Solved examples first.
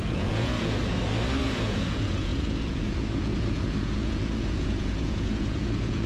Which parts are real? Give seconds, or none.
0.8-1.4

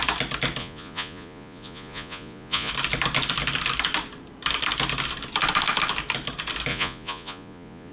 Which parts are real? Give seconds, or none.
0.0-0.6; 2.7-6.7

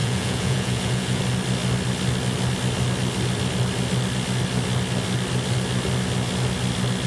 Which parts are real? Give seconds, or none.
1.2-7.1

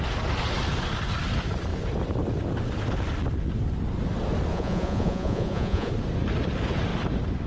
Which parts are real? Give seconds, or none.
0.0-4.5; 5.9-7.5

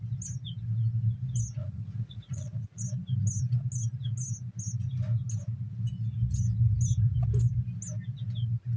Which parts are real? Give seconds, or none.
0.0-1.6; 2.8-8.8

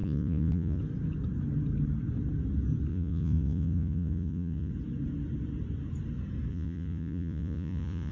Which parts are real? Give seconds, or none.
0.8-2.9; 4.7-6.5